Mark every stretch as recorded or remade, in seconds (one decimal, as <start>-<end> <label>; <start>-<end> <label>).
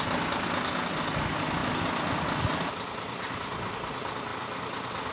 0.0-5.1 recorded